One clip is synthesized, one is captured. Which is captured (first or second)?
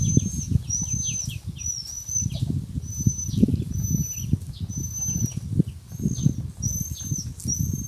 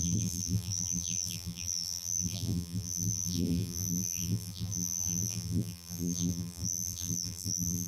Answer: first